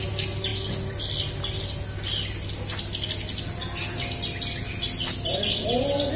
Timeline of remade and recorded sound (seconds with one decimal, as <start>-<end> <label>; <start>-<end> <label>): 0.0-6.2 recorded